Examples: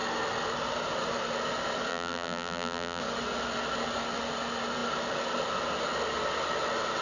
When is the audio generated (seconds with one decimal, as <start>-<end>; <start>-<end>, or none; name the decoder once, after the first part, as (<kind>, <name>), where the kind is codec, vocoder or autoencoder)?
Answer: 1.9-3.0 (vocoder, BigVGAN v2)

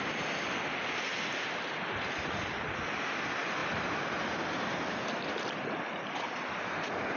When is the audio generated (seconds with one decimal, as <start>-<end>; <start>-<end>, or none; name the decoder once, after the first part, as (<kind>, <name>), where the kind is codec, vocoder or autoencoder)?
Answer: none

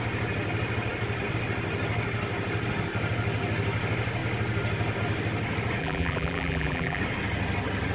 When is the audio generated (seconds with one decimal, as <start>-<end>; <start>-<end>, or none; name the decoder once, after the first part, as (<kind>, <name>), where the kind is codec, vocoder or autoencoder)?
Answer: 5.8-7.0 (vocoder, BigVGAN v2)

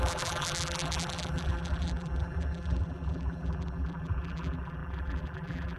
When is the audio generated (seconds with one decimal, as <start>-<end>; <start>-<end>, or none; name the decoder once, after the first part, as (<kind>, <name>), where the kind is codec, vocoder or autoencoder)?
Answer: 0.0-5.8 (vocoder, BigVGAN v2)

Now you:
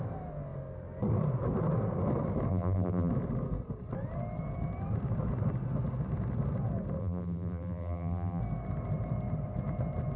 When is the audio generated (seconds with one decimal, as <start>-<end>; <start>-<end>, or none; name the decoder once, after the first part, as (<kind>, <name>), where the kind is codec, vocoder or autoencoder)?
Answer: 2.5-3.1 (vocoder, BigVGAN v2); 7.0-8.4

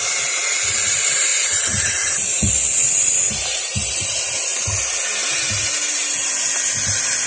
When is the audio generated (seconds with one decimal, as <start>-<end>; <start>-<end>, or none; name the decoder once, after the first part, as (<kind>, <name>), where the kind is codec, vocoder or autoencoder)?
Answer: 1.3-2.5 (vocoder, BigVGAN v2); 3.1-4.4; 5.2-6.3